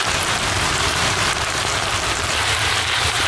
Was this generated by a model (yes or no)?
yes